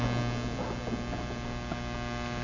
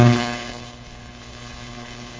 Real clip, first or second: first